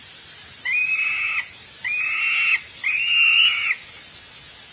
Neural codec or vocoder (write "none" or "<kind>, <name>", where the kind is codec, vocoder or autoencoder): none